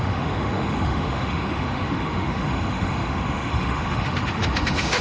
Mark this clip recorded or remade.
remade